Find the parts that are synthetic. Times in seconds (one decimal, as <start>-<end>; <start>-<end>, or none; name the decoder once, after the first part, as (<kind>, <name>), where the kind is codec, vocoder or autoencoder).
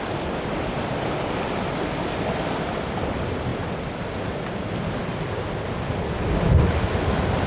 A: none